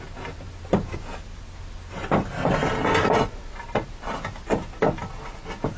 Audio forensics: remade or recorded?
recorded